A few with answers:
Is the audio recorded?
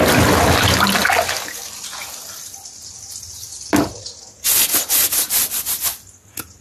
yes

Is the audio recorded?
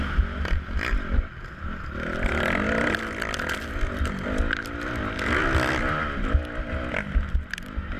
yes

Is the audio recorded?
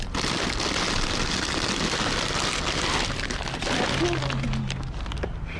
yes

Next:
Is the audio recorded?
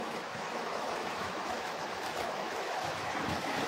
no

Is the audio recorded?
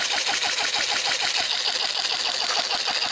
yes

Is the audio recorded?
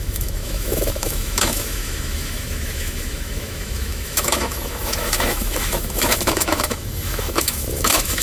no